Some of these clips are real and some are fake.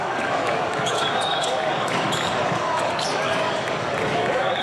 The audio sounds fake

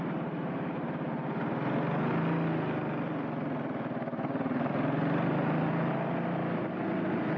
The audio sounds real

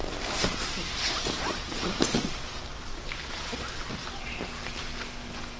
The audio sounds real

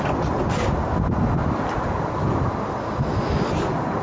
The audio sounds real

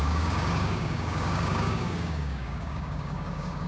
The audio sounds fake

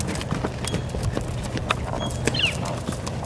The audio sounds real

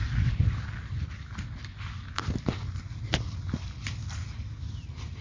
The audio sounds real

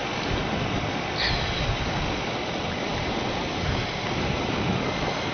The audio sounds real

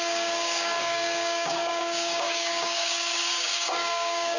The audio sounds fake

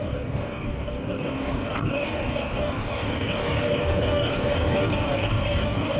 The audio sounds fake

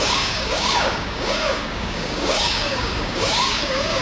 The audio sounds fake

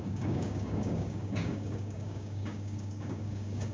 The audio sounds fake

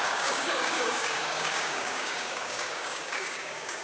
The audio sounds fake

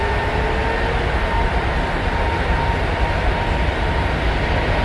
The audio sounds real